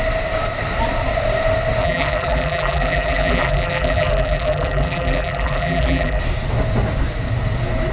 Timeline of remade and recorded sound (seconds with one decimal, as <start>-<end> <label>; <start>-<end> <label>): 0.0-1.8 recorded; 1.8-6.2 remade; 6.2-7.9 recorded